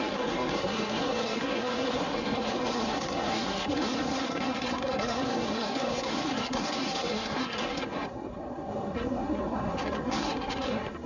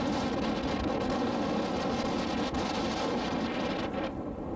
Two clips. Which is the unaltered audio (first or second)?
second